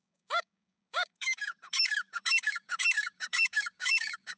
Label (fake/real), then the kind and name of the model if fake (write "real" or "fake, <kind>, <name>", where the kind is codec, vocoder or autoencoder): fake, codec, DAC